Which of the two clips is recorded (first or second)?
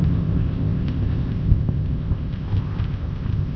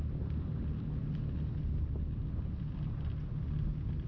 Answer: second